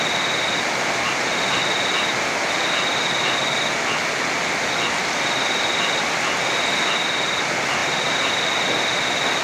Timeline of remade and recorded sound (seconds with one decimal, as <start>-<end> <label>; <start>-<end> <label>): 0.0-9.4 recorded